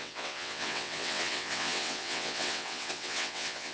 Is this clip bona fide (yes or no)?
no